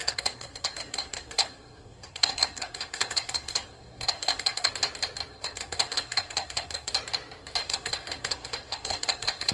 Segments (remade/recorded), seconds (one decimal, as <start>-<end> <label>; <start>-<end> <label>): 0.0-4.7 remade; 4.7-5.3 recorded; 5.3-6.9 remade; 6.9-7.6 recorded; 7.6-9.5 remade